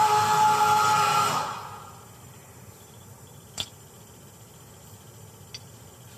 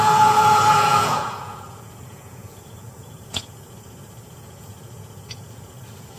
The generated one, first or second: second